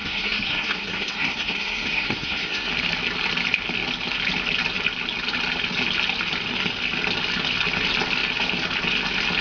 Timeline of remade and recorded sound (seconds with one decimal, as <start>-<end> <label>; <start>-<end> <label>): 0.0-2.7 remade; 2.7-9.4 recorded